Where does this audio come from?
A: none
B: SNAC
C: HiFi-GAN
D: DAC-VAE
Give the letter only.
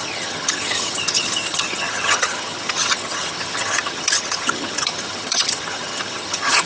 C